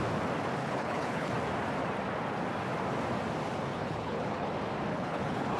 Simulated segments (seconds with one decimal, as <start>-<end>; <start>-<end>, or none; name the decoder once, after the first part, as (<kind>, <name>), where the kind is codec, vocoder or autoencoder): 0.6-1.3 (codec, HILCodec); 3.7-4.5; 4.9-5.6

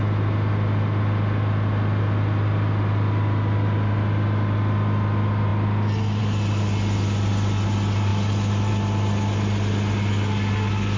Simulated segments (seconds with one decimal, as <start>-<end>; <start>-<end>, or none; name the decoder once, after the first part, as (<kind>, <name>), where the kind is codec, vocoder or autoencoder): none

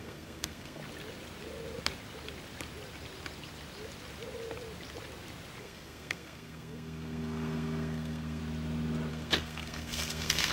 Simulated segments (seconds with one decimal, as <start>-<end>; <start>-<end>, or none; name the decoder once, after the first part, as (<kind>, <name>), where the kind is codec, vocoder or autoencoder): 0.0-0.8 (codec, SNAC); 5.6-8.4; 9.1-10.5

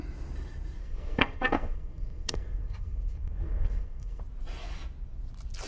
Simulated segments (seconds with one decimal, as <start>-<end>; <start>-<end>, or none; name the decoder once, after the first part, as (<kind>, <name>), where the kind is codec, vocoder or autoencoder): 0.8-4.2 (codec, SNAC)

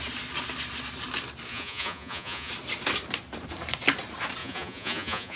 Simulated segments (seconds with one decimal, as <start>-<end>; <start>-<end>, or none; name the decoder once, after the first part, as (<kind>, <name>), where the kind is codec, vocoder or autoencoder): 1.5-2.5 (vocoder, Vocos); 4.4-5.4

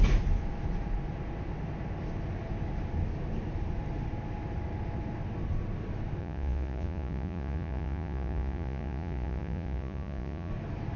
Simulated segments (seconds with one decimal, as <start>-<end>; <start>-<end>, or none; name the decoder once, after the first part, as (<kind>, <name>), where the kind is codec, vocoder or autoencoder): 6.2-10.5 (vocoder, Vocos)